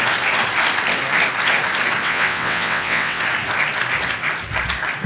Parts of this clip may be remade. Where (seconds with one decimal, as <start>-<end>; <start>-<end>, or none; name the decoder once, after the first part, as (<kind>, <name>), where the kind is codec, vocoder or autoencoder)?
2.0-3.2 (vocoder, WaveNeXt)